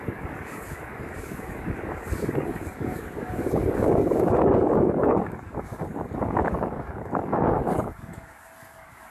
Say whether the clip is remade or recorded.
remade